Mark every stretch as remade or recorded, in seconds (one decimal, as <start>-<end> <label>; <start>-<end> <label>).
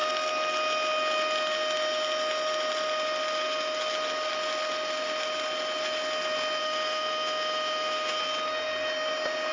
0.0-6.6 recorded; 6.6-8.2 remade; 8.2-9.5 recorded